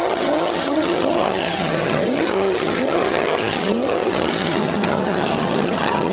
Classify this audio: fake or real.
fake